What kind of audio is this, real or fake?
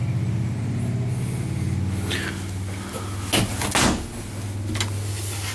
real